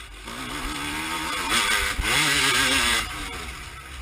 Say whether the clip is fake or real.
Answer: real